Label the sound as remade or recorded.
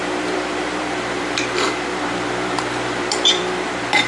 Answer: remade